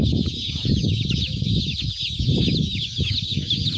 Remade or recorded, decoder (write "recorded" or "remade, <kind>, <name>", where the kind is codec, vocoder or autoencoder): remade, autoencoder, DAC-VAE